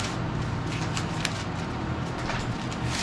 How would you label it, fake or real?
real